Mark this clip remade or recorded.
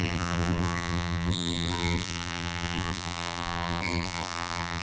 remade